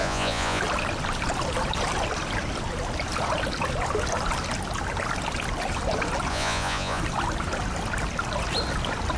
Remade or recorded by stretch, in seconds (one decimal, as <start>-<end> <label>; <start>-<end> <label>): 0.0-0.6 remade; 0.6-6.3 recorded; 6.3-7.0 remade; 7.0-9.2 recorded